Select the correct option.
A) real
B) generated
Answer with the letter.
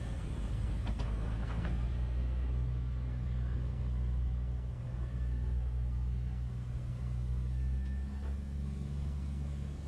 B